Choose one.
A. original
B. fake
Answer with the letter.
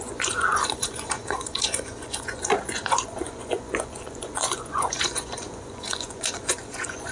B